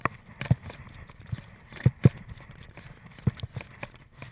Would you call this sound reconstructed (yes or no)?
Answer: no